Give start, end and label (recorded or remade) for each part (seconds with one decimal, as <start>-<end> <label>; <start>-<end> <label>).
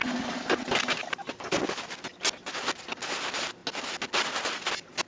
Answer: 0.0-5.1 recorded